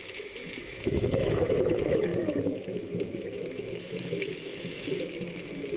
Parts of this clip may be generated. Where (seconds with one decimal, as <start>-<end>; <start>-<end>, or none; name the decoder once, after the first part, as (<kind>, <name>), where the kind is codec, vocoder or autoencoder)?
0.0-5.8 (autoencoder, DAC-VAE)